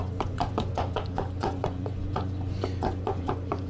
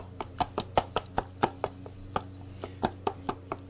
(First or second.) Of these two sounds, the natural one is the second